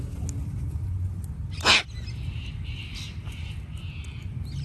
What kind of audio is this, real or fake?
real